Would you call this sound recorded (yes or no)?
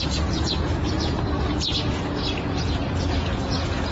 no